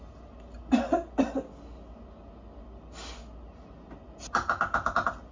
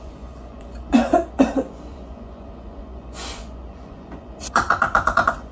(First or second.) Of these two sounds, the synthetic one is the second